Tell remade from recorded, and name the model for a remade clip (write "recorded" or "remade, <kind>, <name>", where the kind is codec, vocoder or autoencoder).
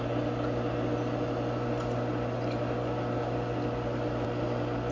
recorded